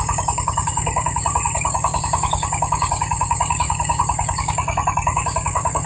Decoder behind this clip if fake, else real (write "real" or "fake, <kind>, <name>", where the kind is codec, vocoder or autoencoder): fake, codec, DAC